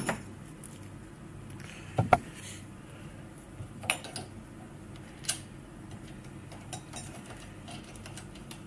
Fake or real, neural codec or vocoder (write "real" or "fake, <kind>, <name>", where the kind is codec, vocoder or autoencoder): real